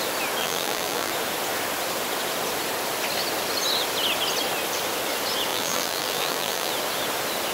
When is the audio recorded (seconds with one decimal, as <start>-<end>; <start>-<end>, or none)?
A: 0.0-0.4; 1.1-5.5; 6.7-7.5